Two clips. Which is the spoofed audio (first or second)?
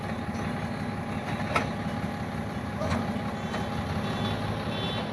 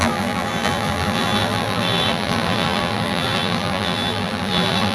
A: second